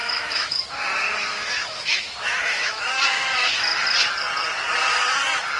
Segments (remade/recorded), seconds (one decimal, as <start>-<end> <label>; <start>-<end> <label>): 0.0-0.8 remade; 0.8-1.3 recorded; 1.3-3.6 remade; 3.6-5.6 recorded